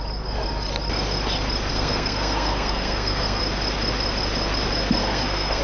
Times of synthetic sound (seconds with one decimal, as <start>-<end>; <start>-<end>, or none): 1.7-3.4; 5.0-5.6